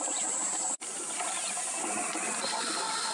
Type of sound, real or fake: fake